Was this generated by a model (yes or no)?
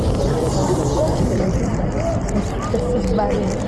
no